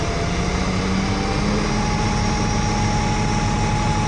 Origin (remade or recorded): recorded